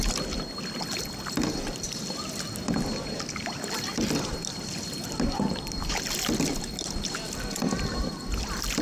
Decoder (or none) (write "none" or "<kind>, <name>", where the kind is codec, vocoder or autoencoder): none